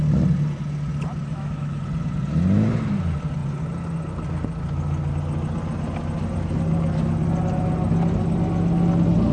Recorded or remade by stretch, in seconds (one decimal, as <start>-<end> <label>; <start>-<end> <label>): 0.0-1.3 recorded; 1.3-1.8 remade; 1.8-9.3 recorded